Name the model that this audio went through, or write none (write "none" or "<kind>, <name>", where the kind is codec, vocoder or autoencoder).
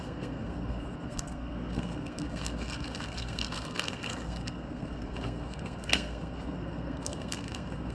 codec, SNAC